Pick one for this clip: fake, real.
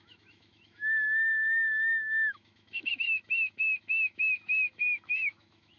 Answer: fake